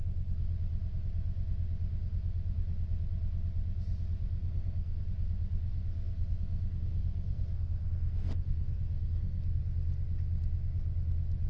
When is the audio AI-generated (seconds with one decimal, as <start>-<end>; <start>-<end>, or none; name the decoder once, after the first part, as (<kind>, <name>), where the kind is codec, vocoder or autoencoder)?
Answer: 4.4-5.0 (codec, SNAC); 5.7-9.6